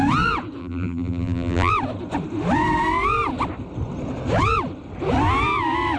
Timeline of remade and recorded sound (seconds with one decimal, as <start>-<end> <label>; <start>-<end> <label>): 0.0-0.6 recorded; 0.6-1.7 remade; 1.7-6.0 recorded